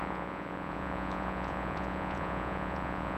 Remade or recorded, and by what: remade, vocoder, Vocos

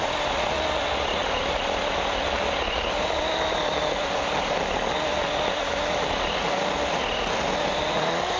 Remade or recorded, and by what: recorded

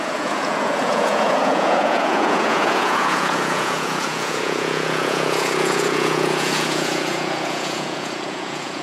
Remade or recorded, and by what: remade, vocoder, Vocos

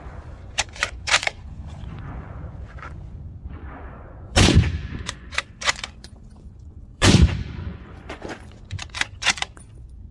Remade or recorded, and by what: remade, vocoder, Vocos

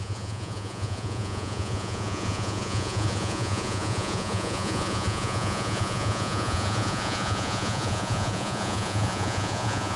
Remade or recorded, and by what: remade, vocoder, Vocos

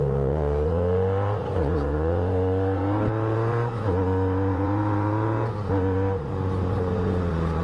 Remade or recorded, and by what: remade, vocoder, Vocos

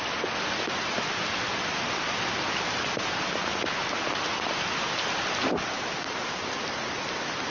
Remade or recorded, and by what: recorded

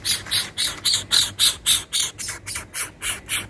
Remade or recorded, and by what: recorded